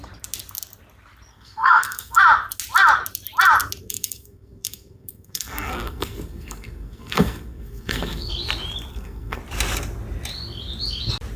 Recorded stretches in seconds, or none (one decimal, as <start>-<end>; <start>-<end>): 0.0-1.3; 2.2-3.8; 8.3-8.9; 9.4-11.4